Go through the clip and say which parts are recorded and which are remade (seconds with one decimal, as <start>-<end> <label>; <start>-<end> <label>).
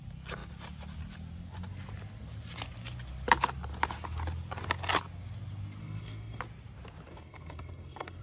0.0-5.8 recorded; 5.8-6.4 remade; 6.4-7.1 recorded; 7.1-8.2 remade